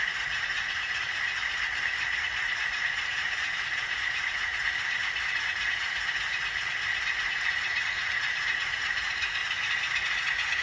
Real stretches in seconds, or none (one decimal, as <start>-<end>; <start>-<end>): 1.4-2.2; 4.5-7.2; 9.4-10.2